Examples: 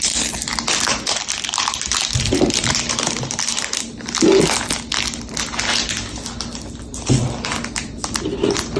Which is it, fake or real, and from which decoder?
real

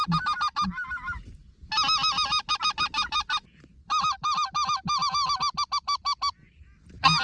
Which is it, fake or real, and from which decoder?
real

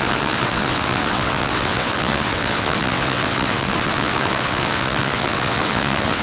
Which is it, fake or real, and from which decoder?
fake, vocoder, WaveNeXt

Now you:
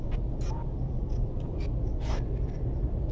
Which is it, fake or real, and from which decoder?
real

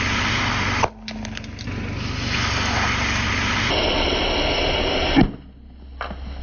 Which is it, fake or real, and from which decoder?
real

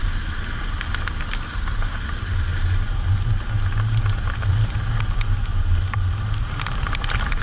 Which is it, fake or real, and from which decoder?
real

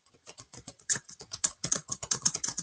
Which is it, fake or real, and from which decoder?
fake, vocoder, WaveNeXt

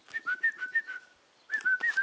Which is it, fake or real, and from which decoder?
real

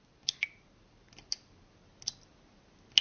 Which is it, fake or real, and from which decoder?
real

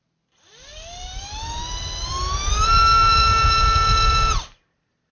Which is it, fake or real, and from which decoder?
real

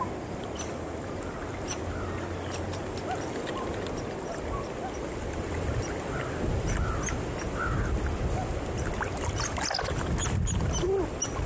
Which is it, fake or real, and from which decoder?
real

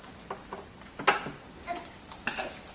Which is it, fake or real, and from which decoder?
real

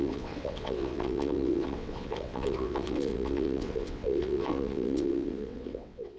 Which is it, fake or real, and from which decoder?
fake, vocoder, WaveNeXt